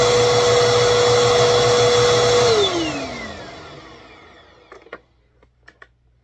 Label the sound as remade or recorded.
recorded